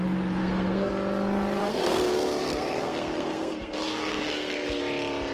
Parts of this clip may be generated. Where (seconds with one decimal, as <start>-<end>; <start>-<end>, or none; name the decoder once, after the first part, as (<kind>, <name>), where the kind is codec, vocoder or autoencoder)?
0.4-0.9 (codec, SNAC); 1.6-4.8